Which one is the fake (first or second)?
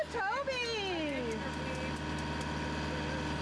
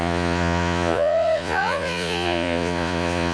second